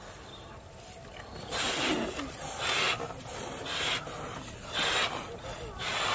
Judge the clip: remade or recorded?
recorded